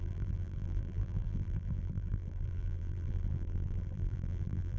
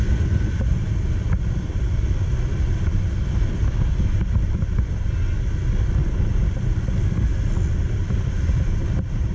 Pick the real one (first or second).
second